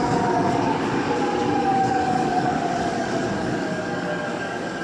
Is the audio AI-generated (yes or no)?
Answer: yes